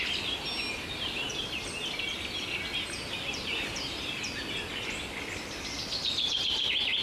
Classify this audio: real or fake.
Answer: real